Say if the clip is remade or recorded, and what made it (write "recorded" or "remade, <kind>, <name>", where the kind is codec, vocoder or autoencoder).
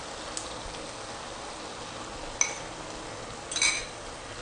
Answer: recorded